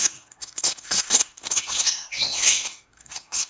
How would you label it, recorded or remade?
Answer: remade